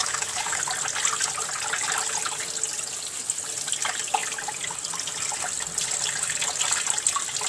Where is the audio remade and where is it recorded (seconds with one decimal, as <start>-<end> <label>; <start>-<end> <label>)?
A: 0.0-0.6 remade; 0.6-7.5 recorded